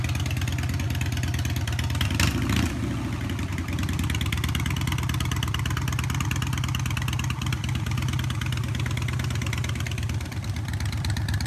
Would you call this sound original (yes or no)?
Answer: yes